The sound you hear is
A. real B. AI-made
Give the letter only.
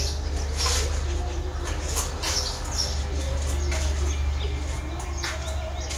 A